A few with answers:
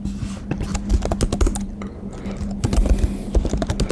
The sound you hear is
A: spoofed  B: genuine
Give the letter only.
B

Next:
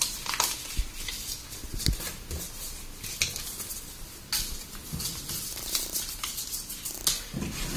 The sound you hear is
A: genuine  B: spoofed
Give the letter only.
A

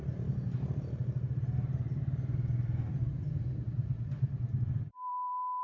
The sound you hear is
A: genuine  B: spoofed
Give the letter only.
B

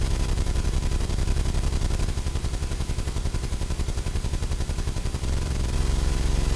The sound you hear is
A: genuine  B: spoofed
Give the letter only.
B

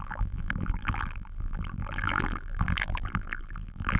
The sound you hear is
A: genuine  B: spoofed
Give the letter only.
B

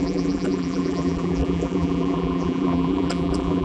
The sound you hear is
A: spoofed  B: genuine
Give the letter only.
A